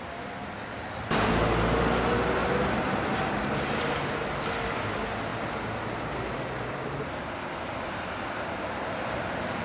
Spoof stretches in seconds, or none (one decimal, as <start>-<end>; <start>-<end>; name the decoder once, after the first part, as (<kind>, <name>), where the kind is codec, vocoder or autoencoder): 0.7-1.3 (vocoder, BigVGAN v2); 2.4-3.4